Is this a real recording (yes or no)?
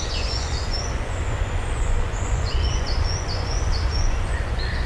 no